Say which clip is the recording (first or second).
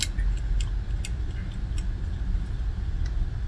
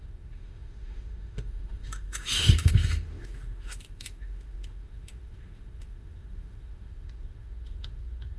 first